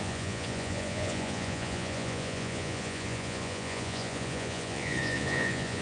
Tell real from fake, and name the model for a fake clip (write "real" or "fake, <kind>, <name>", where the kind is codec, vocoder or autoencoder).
fake, vocoder, Vocos